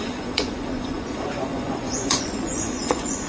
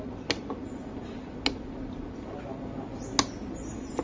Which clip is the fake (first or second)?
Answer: first